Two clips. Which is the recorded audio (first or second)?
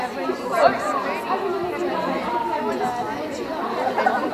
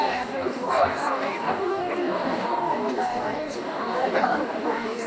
first